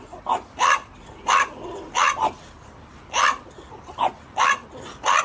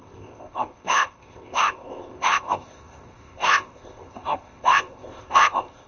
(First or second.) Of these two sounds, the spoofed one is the second